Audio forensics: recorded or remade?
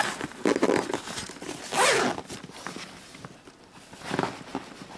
recorded